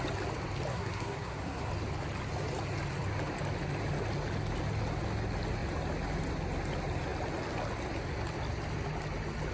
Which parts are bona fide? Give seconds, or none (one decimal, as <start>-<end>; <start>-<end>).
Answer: 0.0-0.7; 1.7-9.5